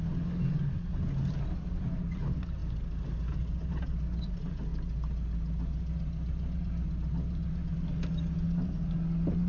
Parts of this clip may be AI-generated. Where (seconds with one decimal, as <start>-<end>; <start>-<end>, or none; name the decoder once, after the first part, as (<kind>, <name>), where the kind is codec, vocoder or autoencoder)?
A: none